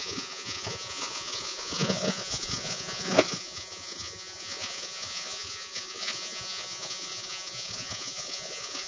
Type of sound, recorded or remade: remade